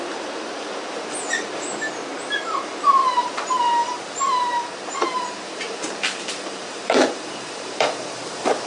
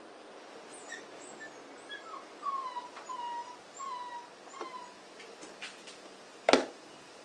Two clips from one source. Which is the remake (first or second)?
first